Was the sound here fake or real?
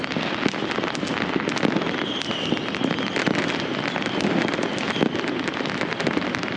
real